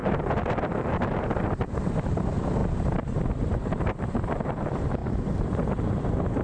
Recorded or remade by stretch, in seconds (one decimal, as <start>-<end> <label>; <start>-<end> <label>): 0.0-2.6 remade; 2.6-3.8 recorded; 3.8-6.4 remade